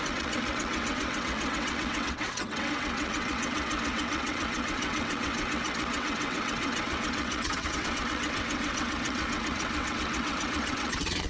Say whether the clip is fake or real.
fake